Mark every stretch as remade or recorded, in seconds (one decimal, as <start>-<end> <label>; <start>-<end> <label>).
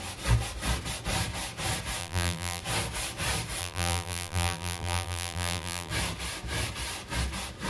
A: 0.0-2.0 recorded; 2.0-2.6 remade; 2.6-3.6 recorded; 3.6-5.9 remade; 5.9-7.7 recorded